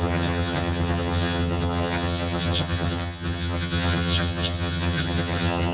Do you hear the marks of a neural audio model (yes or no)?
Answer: yes